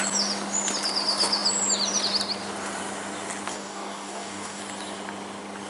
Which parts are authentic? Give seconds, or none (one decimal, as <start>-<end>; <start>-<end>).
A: 0.0-3.5; 4.6-5.7